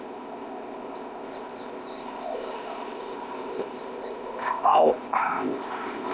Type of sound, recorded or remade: remade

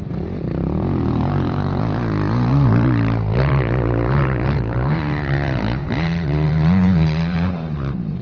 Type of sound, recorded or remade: remade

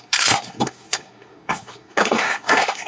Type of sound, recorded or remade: remade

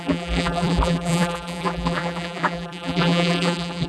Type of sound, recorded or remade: remade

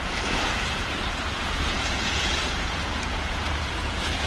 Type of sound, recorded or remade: remade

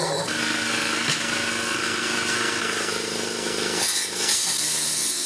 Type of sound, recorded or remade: remade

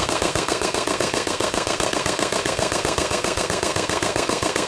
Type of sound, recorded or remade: remade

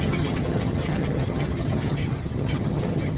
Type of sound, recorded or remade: remade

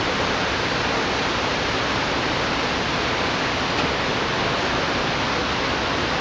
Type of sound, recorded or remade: recorded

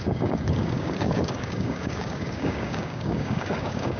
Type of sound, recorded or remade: remade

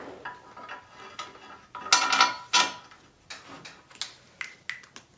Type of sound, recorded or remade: recorded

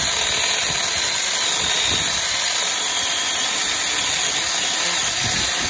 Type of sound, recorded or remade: recorded